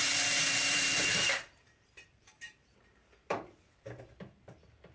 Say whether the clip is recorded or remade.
remade